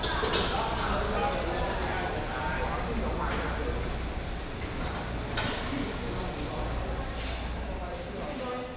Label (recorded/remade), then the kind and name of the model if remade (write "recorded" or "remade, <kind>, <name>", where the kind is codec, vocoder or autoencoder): recorded